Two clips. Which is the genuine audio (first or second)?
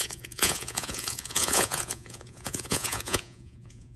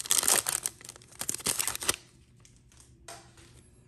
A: second